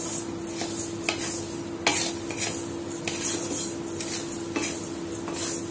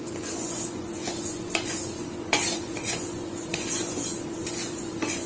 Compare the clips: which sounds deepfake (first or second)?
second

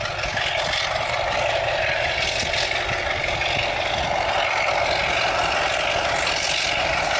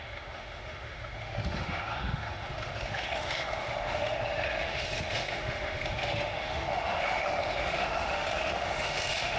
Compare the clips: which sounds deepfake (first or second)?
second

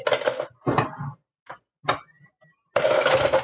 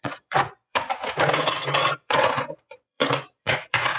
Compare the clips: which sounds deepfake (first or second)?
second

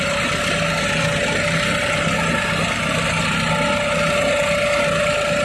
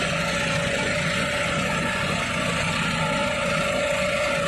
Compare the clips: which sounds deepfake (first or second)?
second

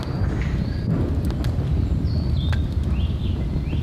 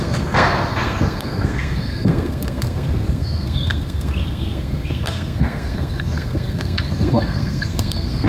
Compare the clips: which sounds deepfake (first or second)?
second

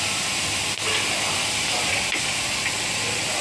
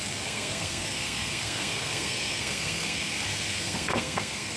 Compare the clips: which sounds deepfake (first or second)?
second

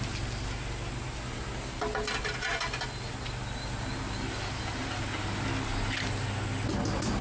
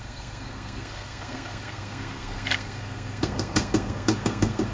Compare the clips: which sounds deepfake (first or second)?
second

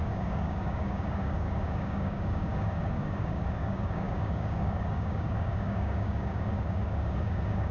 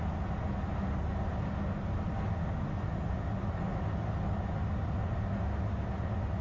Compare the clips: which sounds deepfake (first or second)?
first